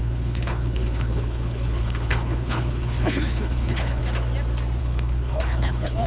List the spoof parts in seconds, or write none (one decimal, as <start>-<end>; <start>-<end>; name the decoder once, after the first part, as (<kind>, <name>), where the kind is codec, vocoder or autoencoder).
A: 0.0-4.0 (codec, HILCodec); 4.8-6.1